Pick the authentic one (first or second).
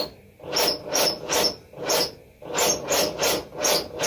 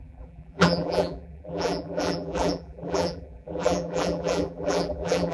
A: first